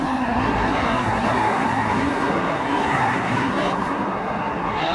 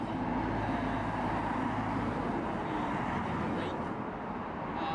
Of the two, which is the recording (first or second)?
second